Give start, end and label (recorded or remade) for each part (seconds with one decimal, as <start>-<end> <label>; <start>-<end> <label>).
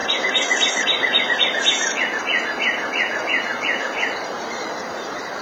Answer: 0.0-2.0 remade; 2.0-3.5 recorded; 3.5-4.8 remade; 4.8-5.4 recorded